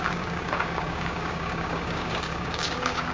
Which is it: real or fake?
fake